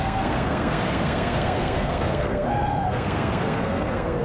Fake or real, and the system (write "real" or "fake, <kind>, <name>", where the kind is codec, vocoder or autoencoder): fake, codec, SNAC